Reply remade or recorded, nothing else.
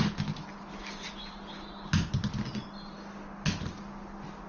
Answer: recorded